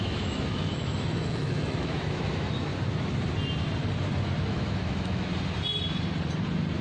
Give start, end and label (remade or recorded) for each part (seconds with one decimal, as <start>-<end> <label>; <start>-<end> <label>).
0.0-2.7 remade; 2.7-4.5 recorded; 4.5-5.3 remade; 5.3-6.8 recorded